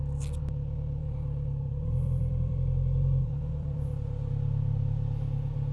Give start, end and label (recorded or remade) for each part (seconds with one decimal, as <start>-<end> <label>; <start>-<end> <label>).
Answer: 0.0-1.0 recorded; 1.0-4.3 remade; 4.3-5.7 recorded